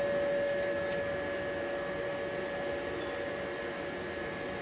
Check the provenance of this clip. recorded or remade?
recorded